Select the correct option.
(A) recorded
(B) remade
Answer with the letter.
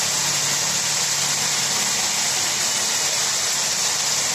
A